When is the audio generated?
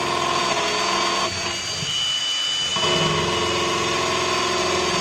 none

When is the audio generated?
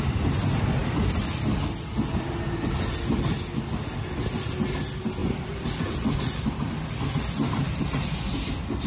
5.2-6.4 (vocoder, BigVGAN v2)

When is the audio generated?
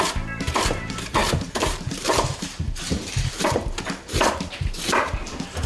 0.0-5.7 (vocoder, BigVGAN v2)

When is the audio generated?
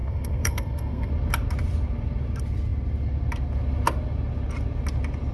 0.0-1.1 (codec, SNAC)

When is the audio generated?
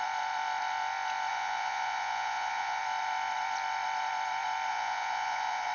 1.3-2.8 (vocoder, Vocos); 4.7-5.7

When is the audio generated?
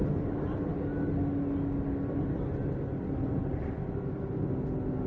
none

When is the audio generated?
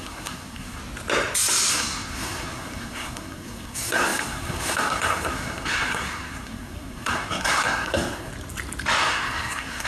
0.0-0.8 (codec, SNAC); 1.7-8.3; 9.0-9.9